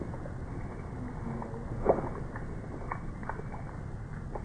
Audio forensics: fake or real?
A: real